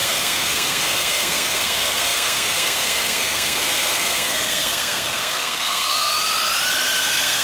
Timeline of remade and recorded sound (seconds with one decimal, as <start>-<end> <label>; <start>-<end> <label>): 0.0-6.1 remade; 6.1-7.0 recorded; 7.0-7.4 remade